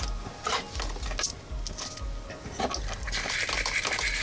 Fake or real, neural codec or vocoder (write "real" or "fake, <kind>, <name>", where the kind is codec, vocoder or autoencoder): real